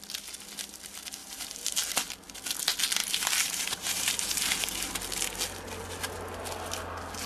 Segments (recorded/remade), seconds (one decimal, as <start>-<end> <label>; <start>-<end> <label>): 0.0-1.2 recorded; 1.2-1.9 remade; 1.9-3.0 recorded; 3.0-4.9 remade; 4.9-7.3 recorded

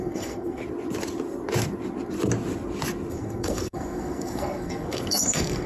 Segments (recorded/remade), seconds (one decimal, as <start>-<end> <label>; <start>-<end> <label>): 0.0-0.6 remade; 0.6-3.1 recorded; 3.1-5.7 remade